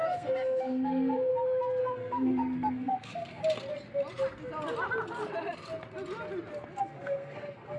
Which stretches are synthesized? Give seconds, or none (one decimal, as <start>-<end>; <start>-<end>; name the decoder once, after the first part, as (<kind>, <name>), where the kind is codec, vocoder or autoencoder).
0.0-1.3 (codec, SNAC); 1.8-3.4; 6.8-7.8